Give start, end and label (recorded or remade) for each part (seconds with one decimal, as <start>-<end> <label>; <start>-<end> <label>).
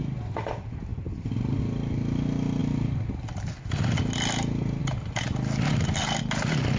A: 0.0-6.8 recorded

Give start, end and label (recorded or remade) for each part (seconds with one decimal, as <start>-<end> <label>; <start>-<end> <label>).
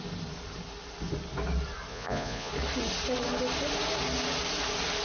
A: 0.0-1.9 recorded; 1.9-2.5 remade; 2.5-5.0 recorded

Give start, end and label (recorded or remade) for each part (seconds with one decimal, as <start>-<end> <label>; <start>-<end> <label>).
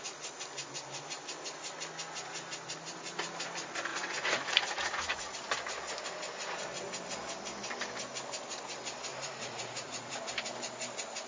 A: 0.0-3.9 recorded; 3.9-5.3 remade; 5.3-9.1 recorded; 9.1-10.2 remade; 10.2-11.3 recorded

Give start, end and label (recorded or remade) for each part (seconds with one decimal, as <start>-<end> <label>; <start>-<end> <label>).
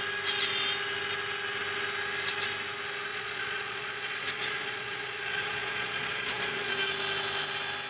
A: 0.0-3.1 recorded; 3.1-6.7 remade; 6.7-7.9 recorded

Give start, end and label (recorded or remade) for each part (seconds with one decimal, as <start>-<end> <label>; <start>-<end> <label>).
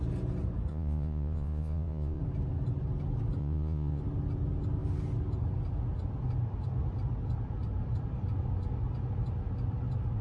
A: 0.0-0.7 recorded; 0.7-2.2 remade; 2.2-3.4 recorded; 3.4-4.0 remade; 4.0-10.2 recorded